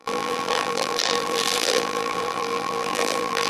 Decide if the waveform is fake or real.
fake